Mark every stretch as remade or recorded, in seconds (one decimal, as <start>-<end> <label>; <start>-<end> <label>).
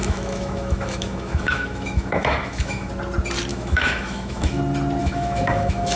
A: 0.0-2.9 remade; 2.9-3.5 recorded; 3.5-4.6 remade; 4.6-5.0 recorded; 5.0-6.0 remade